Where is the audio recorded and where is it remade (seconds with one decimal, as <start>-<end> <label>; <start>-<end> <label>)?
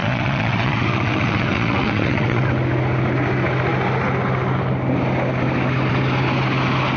0.0-2.5 remade; 2.5-7.0 recorded